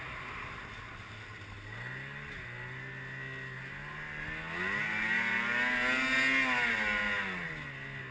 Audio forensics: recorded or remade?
recorded